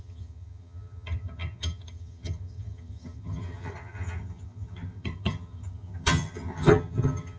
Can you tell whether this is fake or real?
fake